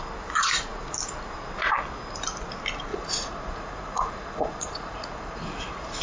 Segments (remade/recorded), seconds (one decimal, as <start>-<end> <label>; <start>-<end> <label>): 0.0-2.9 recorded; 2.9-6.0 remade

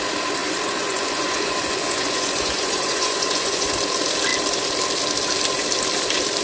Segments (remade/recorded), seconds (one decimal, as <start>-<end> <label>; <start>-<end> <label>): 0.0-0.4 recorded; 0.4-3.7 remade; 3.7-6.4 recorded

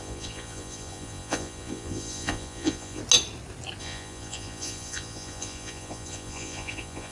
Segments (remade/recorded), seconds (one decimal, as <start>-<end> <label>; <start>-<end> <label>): 0.0-3.0 remade; 3.0-3.8 recorded; 3.8-7.1 remade

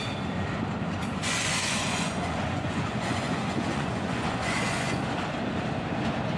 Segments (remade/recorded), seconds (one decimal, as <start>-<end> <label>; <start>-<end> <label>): 0.0-1.2 recorded; 1.2-5.0 remade; 5.0-6.4 recorded

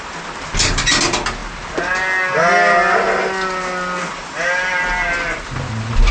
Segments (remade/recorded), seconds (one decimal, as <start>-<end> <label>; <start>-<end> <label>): 0.0-6.1 recorded

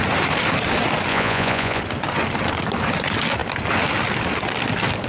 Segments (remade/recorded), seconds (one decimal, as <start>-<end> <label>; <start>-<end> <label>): 0.0-1.1 recorded; 1.1-1.8 remade; 1.8-5.1 recorded